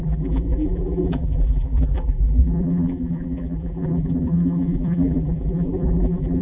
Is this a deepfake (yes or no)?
yes